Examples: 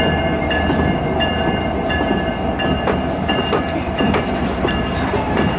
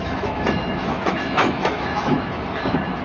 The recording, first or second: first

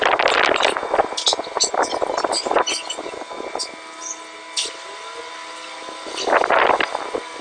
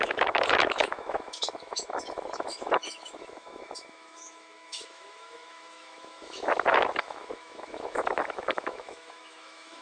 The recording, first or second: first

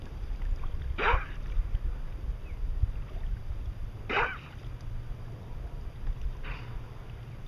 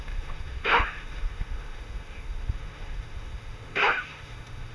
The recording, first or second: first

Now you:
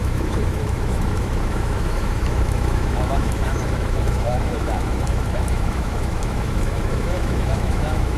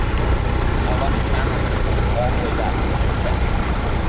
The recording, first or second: second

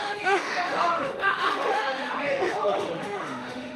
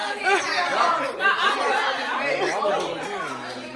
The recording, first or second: second